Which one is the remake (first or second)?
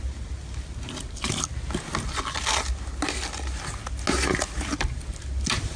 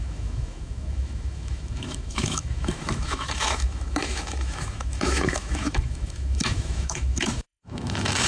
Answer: second